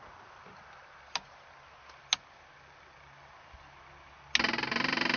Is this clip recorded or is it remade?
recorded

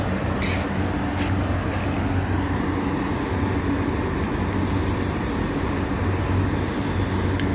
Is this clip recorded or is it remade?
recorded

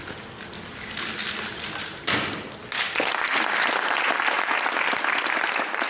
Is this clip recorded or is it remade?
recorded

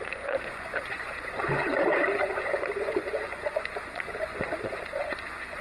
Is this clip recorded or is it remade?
remade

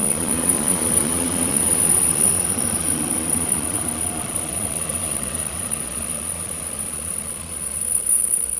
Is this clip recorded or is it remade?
remade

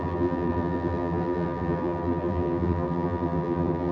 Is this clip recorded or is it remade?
remade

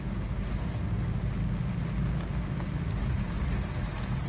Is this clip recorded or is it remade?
recorded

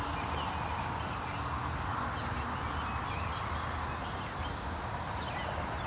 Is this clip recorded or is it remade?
recorded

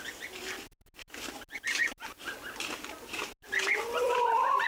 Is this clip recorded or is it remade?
recorded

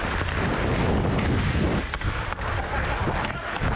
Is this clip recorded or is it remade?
recorded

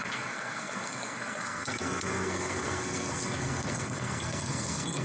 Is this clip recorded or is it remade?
remade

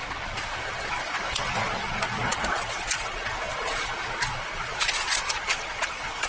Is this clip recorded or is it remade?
remade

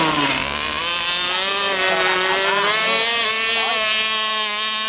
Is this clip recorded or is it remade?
recorded